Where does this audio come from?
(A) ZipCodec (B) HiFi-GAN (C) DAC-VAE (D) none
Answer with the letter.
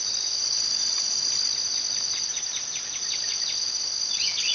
D